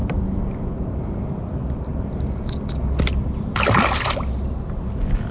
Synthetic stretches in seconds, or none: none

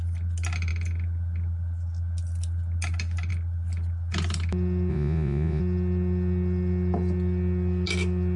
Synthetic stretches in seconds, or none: 4.9-5.6 (vocoder, Vocos)

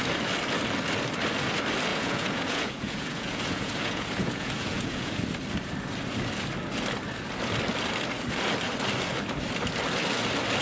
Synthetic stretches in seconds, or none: 1.9-5.1 (vocoder, Vocos)

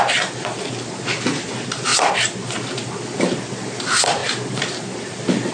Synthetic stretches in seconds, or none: none

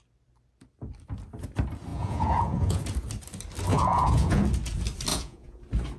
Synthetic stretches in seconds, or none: 1.9-2.8 (vocoder, Vocos); 3.7-4.4; 5.1-5.6

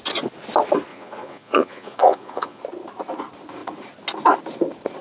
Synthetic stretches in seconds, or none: 0.9-2.6 (vocoder, Vocos)

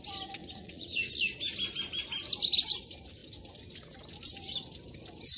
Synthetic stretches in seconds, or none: 0.4-1.1 (vocoder, Vocos)